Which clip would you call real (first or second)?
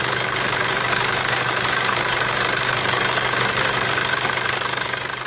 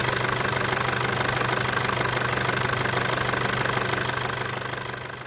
second